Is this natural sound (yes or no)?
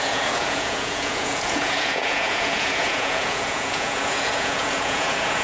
no